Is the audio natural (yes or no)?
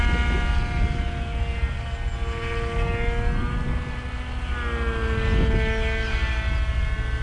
yes